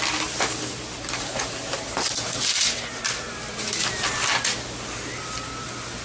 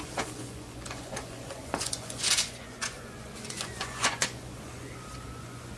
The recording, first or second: first